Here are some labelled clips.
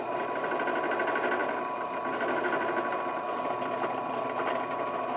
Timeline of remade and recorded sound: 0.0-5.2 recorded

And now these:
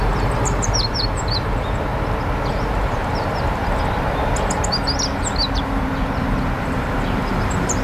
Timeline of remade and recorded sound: 0.0-1.9 remade; 1.9-2.5 recorded; 2.5-3.6 remade; 3.6-6.6 recorded; 6.6-7.8 remade

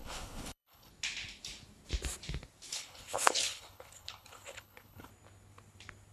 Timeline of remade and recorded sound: 0.0-0.9 remade; 0.9-2.7 recorded; 2.7-5.1 remade; 5.1-6.1 recorded